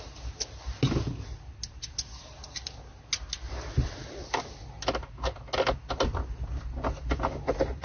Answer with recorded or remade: recorded